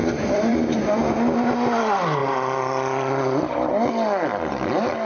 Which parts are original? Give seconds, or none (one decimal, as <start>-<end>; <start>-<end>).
1.0-5.1